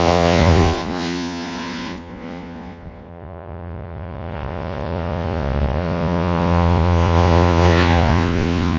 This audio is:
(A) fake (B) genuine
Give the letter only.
A